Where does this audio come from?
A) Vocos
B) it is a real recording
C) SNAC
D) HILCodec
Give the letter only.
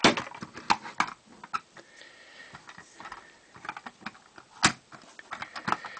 B